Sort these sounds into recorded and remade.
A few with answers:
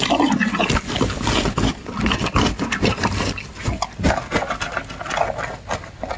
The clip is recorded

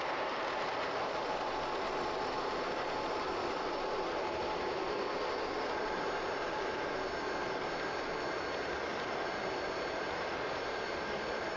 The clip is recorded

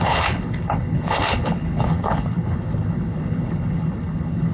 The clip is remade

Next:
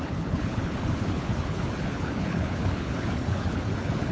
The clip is remade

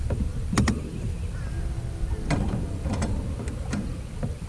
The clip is recorded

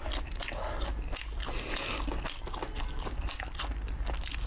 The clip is recorded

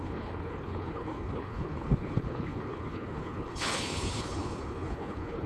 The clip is remade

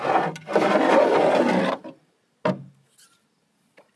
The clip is recorded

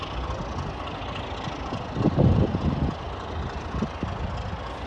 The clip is recorded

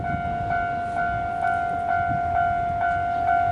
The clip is recorded